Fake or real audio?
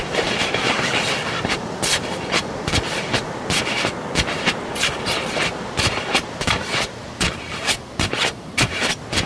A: fake